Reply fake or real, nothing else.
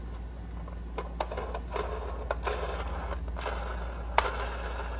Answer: real